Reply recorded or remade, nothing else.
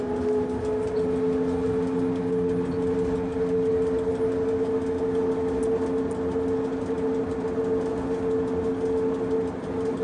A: recorded